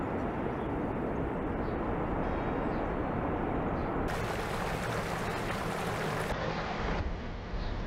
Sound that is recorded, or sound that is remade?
recorded